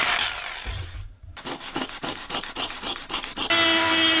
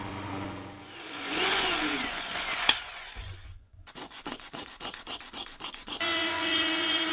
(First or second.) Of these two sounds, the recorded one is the first